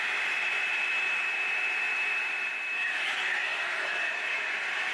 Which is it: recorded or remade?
remade